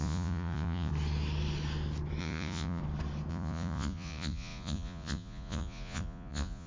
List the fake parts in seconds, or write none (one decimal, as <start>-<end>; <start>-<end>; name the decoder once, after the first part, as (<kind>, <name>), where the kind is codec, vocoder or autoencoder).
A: 0.0-0.9 (vocoder, Vocos); 2.2-2.8; 3.3-6.7